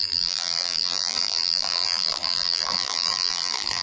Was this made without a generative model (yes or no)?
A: no